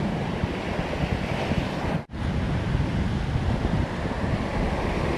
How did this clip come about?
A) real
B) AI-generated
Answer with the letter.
A